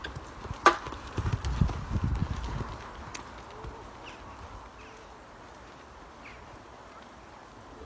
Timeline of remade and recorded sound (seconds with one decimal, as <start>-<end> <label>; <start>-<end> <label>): 0.0-7.9 recorded